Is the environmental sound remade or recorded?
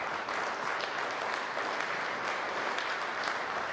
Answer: recorded